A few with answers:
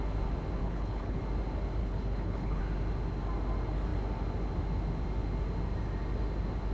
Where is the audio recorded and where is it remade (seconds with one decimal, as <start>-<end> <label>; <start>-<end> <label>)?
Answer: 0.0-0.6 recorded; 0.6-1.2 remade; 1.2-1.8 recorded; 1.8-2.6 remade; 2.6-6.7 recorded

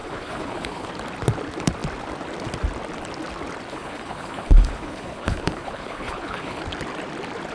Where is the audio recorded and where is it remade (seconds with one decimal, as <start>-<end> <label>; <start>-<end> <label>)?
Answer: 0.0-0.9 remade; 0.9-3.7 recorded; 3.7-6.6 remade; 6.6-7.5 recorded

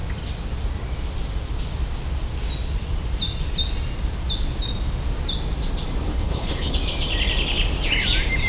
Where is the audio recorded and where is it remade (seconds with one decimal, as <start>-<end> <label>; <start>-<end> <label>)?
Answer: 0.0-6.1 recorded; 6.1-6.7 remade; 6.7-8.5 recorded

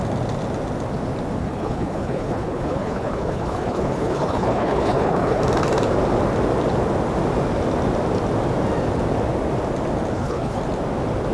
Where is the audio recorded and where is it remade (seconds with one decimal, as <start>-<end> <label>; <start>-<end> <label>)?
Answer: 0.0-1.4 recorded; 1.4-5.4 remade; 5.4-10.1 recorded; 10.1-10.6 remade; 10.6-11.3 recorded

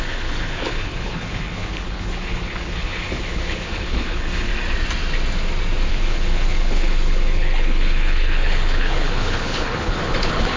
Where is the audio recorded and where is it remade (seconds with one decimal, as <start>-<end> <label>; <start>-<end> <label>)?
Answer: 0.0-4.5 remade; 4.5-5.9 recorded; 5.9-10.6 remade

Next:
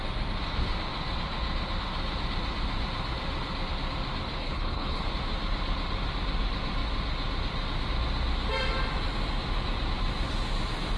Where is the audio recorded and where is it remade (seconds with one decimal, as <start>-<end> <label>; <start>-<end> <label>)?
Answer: 0.0-4.4 recorded; 4.4-5.1 remade; 5.1-11.0 recorded

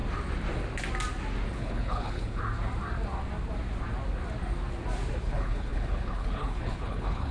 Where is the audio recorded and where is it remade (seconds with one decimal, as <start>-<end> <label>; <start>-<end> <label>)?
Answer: 0.0-1.5 recorded; 1.5-2.4 remade; 2.4-5.2 recorded; 5.2-7.3 remade